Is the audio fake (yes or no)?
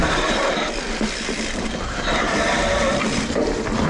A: yes